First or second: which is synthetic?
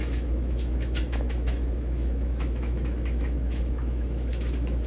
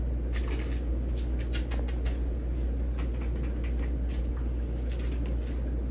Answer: first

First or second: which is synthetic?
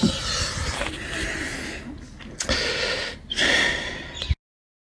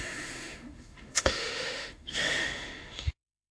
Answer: second